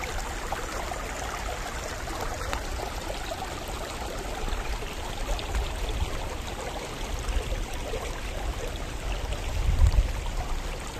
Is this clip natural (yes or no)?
yes